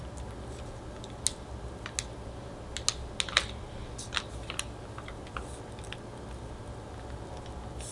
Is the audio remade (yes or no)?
no